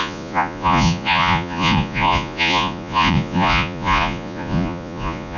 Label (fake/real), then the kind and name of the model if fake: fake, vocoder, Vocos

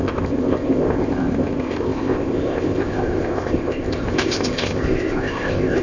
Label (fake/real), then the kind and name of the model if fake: fake, codec, ZipCodec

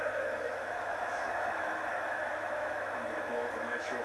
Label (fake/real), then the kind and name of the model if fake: fake, autoencoder, DAC-VAE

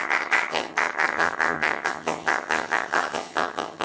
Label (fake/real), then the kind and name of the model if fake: fake, vocoder, HiFi-GAN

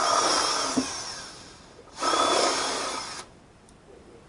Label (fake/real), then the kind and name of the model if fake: real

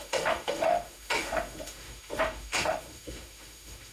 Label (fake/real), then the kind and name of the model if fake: fake, autoencoder, DAC-VAE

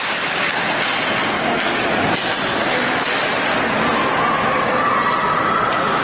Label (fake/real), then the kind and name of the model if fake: real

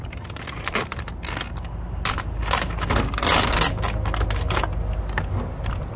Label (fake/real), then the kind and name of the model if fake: real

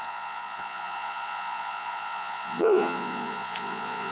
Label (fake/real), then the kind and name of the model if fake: fake, vocoder, Vocos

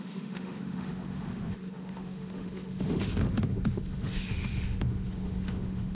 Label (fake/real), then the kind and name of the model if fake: fake, autoencoder, DAC-VAE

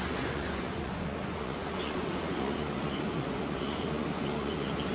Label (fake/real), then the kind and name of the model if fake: fake, vocoder, Vocos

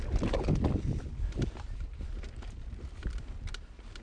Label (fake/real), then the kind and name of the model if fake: real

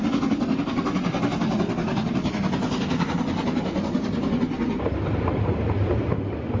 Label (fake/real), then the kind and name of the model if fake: real